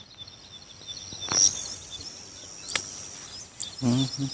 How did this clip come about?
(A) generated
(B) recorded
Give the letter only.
B